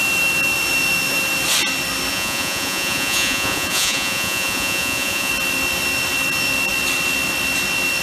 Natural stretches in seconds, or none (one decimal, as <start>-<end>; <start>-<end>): 0.0-2.1; 5.3-8.0